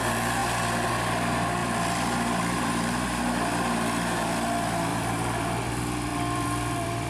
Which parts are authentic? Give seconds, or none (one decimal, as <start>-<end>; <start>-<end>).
0.0-1.6; 3.2-4.9; 5.5-6.1